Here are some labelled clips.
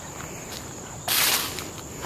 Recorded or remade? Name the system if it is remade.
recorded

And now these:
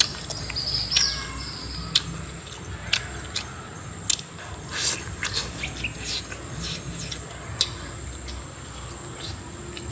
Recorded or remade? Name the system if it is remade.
recorded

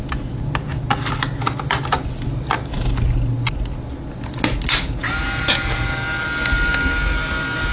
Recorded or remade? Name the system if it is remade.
recorded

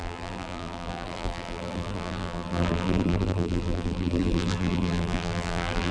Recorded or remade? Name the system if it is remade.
remade, vocoder, BigVGAN v2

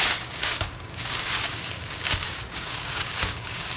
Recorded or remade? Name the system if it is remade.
remade, codec, DAC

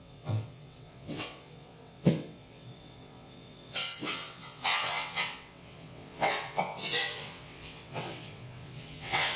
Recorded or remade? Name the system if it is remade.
remade, vocoder, WaveNeXt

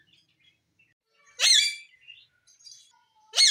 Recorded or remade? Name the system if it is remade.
recorded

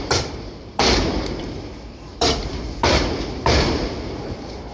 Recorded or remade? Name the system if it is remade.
remade, vocoder, BigVGAN v2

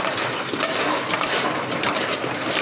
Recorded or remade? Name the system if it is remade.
recorded